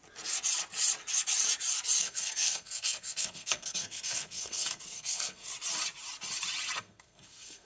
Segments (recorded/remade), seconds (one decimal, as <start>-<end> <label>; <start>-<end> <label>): 0.0-2.0 recorded; 2.0-5.5 remade; 5.5-6.8 recorded; 6.8-7.7 remade